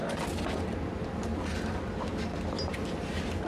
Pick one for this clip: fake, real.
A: real